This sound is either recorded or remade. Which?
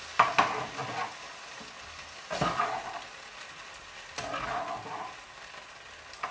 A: recorded